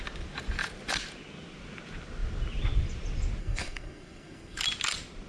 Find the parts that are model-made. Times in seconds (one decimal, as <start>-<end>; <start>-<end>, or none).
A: 3.4-4.6

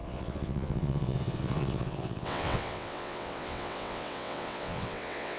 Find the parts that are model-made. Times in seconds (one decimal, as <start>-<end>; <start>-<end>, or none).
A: 0.0-5.4